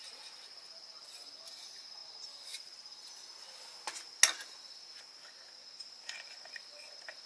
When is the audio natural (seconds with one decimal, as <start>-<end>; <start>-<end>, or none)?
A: 0.0-7.3